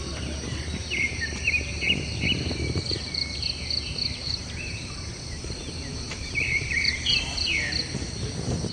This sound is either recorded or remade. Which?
remade